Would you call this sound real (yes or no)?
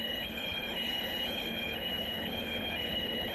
no